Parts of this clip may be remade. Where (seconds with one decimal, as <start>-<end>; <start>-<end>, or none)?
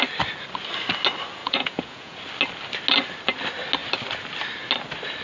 1.4-2.2